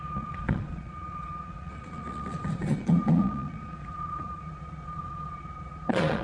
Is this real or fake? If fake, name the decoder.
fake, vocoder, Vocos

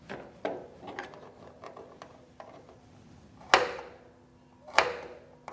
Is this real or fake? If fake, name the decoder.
real